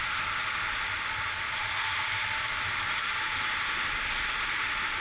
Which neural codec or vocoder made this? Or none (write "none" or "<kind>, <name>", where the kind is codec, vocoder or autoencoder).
none